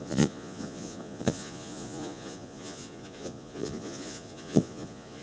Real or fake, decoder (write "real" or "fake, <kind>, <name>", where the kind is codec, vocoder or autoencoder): fake, vocoder, Vocos